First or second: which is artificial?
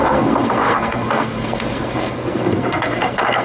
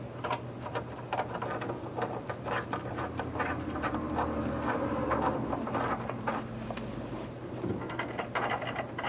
first